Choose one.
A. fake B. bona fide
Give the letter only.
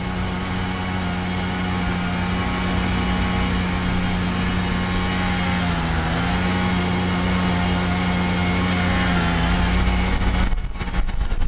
B